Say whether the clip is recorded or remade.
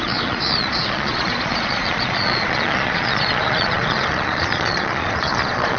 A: remade